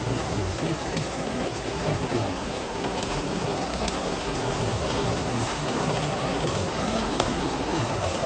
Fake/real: fake